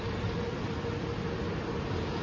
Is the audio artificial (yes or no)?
no